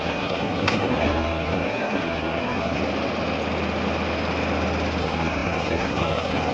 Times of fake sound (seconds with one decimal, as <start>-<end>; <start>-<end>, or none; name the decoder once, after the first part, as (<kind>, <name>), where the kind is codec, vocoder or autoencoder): 0.0-2.8 (codec, SNAC); 5.0-6.5